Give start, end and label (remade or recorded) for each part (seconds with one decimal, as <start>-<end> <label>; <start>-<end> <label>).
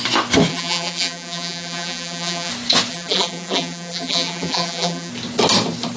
0.0-0.5 recorded; 0.5-2.5 remade; 2.5-2.9 recorded; 2.9-5.1 remade; 5.1-6.0 recorded